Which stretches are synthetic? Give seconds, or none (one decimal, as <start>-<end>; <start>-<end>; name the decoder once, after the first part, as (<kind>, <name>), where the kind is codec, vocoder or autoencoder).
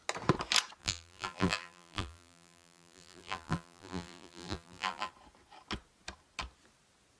0.8-5.1 (vocoder, BigVGAN v2)